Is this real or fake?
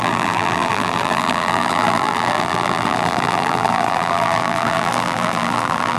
fake